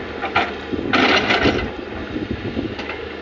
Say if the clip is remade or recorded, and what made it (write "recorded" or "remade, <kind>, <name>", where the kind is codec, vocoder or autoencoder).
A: recorded